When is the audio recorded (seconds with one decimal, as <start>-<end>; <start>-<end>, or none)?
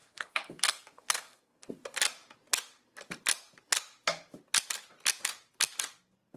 1.7-6.4